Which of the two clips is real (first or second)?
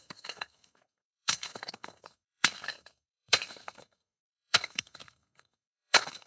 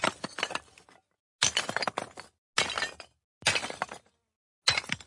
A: second